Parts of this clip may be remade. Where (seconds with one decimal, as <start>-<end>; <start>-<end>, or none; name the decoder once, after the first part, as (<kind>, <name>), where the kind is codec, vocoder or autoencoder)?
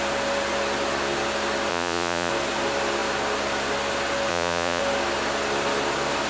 1.7-2.3 (vocoder, Vocos); 4.3-4.8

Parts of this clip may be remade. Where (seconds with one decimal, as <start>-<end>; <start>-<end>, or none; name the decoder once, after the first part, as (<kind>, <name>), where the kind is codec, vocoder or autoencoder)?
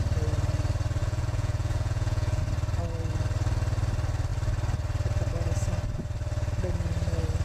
1.0-2.4 (vocoder, Vocos)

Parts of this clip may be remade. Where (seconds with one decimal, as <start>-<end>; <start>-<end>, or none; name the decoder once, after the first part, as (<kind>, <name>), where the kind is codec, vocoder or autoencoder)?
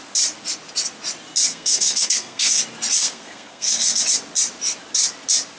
1.5-2.6 (codec, SNAC); 3.0-4.0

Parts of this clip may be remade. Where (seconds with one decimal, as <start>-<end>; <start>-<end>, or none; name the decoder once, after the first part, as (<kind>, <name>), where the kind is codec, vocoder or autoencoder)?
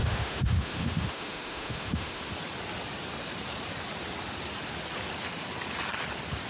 0.0-2.2 (autoencoder, DAC-VAE)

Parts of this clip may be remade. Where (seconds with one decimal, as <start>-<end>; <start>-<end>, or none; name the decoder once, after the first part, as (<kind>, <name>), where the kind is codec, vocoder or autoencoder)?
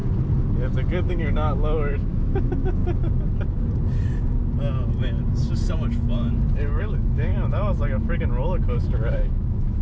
1.1-2.8 (autoencoder, DAC-VAE); 6.8-7.3; 8.2-9.8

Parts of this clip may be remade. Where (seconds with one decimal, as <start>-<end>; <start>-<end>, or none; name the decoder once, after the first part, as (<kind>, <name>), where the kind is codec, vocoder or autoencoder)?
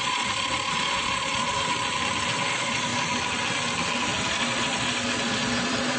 0.0-1.4 (vocoder, Vocos); 2.5-2.9; 4.3-6.0